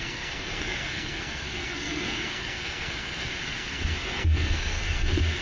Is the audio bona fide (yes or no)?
no